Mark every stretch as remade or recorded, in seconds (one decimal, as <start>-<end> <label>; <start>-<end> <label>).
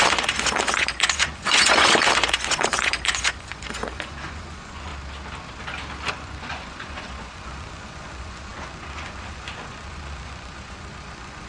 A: 0.0-4.9 remade; 4.9-6.1 recorded; 6.1-11.5 remade